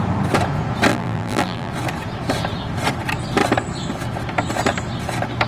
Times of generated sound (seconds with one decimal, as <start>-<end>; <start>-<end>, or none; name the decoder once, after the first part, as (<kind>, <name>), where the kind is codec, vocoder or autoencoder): 0.9-1.7 (vocoder, BigVGAN v2)